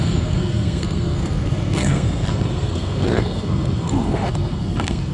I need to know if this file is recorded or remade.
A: remade